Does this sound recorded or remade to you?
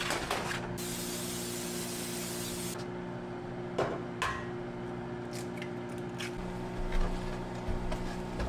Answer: recorded